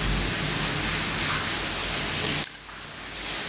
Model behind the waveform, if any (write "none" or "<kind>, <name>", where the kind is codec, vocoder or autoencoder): none